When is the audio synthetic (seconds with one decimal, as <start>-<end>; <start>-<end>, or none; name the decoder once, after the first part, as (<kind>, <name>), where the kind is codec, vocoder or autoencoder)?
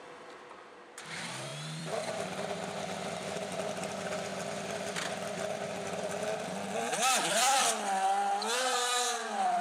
0.0-4.3 (vocoder, BigVGAN v2); 6.7-7.6